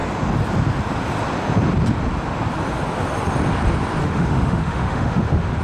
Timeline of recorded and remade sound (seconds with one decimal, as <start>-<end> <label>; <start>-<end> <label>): 0.0-4.0 recorded; 4.0-5.6 remade